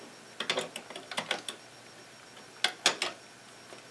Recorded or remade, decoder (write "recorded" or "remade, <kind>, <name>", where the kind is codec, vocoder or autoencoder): recorded